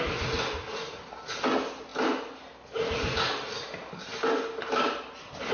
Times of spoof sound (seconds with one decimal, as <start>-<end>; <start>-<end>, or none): none